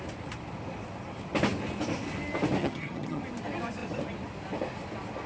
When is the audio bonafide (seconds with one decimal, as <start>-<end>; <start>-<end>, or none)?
0.0-2.6; 3.2-5.3